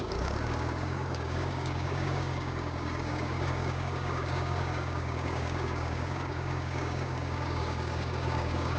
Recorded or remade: remade